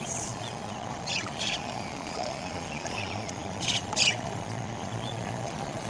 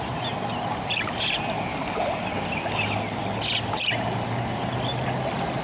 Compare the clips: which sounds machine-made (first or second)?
first